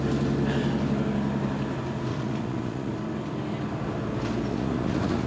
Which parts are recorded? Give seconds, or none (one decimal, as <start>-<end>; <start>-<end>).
0.0-2.1; 2.9-4.5